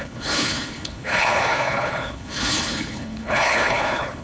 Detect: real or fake fake